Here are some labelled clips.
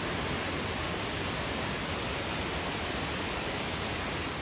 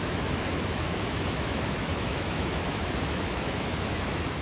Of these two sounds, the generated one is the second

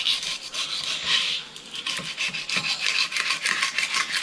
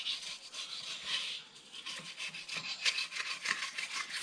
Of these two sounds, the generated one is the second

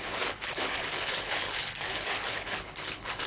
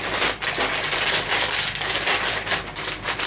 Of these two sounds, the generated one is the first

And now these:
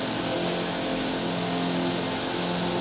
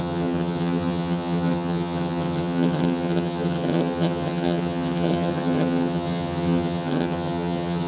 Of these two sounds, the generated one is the second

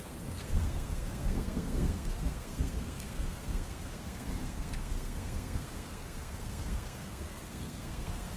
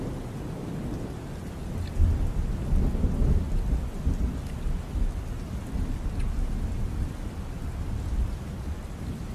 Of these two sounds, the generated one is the first